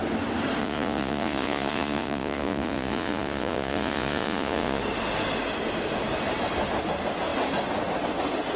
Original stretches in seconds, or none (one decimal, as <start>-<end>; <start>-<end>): 0.0-0.6; 4.8-8.6